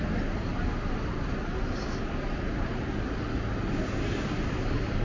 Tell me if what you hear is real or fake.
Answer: real